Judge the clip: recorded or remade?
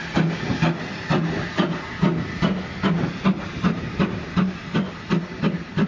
recorded